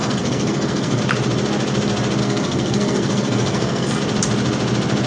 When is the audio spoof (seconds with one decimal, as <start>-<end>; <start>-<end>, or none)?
0.0-1.0; 2.2-4.0